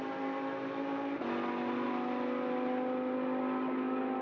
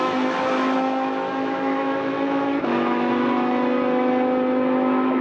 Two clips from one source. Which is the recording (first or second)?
first